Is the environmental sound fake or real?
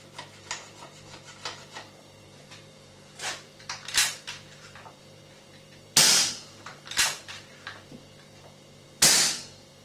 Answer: fake